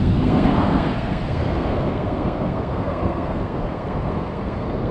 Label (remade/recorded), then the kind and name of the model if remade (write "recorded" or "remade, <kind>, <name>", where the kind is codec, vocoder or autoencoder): remade, codec, SNAC